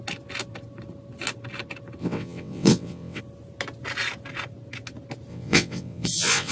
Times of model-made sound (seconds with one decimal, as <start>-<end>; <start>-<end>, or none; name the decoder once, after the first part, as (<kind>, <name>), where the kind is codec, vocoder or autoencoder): 2.0-3.2 (vocoder, WaveNeXt); 5.3-6.5